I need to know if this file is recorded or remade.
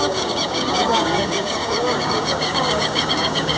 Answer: remade